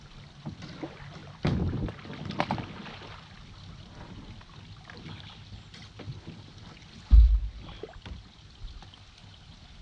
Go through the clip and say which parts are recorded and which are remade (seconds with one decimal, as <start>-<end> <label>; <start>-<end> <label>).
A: 0.0-9.8 recorded